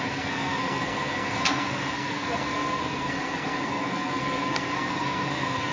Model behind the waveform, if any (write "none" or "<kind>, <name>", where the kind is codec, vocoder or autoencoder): codec, SNAC